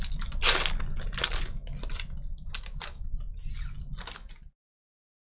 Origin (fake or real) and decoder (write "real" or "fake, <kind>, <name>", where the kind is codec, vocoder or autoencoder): real